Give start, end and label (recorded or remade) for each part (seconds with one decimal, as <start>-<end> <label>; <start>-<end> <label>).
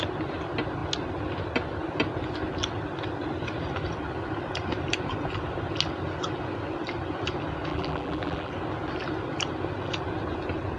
0.0-7.7 recorded; 7.7-8.5 remade; 8.5-10.8 recorded